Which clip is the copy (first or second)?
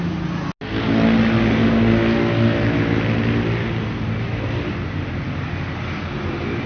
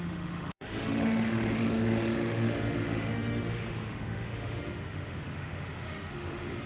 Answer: second